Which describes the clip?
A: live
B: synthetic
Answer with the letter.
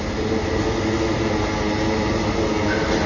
A